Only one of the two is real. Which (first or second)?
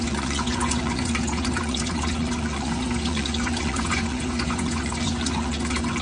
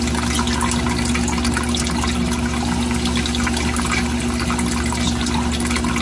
second